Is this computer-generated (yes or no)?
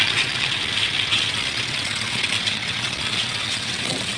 yes